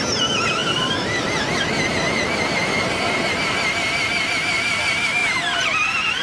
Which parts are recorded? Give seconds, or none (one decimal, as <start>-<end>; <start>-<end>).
0.0-6.2